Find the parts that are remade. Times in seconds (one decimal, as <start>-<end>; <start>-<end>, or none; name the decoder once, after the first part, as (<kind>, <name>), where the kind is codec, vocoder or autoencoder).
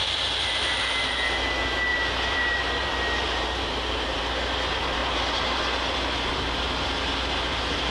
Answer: 1.9-4.2 (vocoder, BigVGAN v2); 5.0-5.6